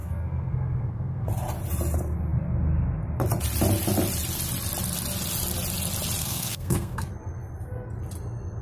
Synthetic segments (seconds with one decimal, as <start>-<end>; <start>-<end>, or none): 0.0-1.3; 6.2-7.1